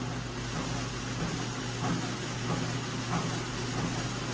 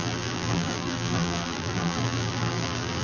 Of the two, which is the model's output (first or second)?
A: second